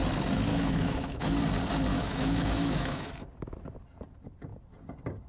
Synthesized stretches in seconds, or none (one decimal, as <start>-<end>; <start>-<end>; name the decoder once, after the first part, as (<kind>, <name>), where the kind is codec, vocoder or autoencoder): 0.5-1.3 (autoencoder, DAC-VAE); 1.9-3.1